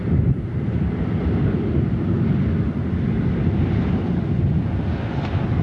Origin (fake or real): real